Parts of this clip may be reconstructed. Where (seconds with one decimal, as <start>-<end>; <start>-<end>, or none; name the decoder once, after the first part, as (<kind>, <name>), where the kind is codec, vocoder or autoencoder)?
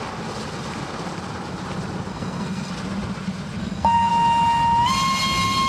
2.1-2.7 (codec, SNAC); 3.6-4.1